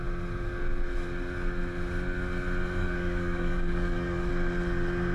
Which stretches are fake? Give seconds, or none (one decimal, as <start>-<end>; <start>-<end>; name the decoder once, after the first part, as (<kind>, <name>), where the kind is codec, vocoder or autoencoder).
2.8-4.3 (codec, DAC)